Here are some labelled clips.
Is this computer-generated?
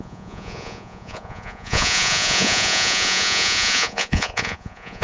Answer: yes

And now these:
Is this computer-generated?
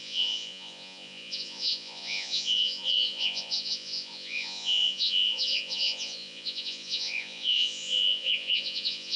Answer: yes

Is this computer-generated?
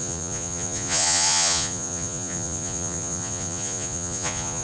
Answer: yes